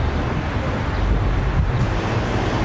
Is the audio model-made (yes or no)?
no